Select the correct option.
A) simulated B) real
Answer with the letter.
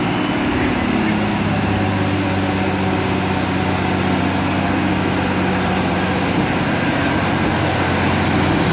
B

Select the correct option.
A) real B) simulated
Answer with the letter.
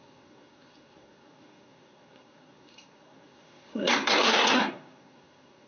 B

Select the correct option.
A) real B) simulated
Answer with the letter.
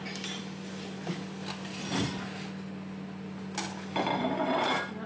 A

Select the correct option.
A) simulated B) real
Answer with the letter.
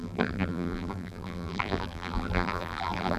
A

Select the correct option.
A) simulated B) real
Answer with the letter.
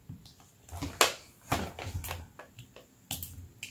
B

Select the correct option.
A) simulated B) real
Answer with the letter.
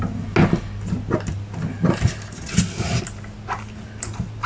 B